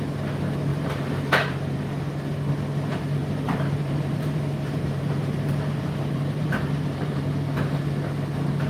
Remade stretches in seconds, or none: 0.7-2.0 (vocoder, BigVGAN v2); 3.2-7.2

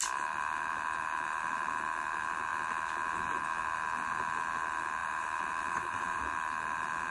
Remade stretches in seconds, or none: 5.0-6.2 (vocoder, BigVGAN v2)

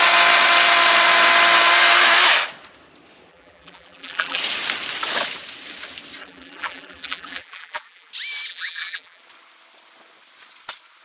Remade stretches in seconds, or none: 3.3-4.4 (vocoder, BigVGAN v2); 6.2-8.1; 8.5-9.2

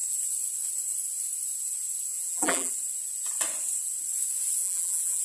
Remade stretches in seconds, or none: 2.1-2.7 (vocoder, BigVGAN v2); 4.6-5.2

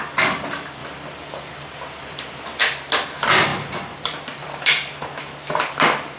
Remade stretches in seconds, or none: 0.8-2.6 (vocoder, BigVGAN v2); 3.5-5.2

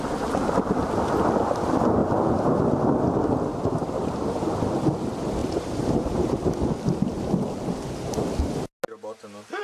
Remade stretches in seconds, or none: 3.5-4.4 (vocoder, BigVGAN v2); 5.4-6.4